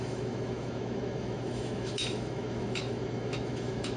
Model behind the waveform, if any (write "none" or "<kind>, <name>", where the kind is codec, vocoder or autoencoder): autoencoder, DAC-VAE